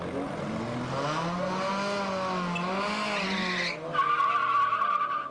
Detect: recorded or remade recorded